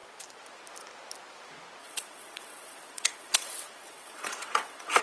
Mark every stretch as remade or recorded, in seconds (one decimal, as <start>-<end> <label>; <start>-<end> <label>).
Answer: 0.0-1.8 recorded; 1.8-5.0 remade